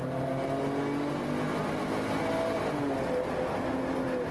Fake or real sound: real